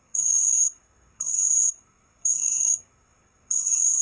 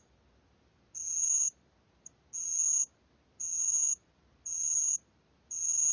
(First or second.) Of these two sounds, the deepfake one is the first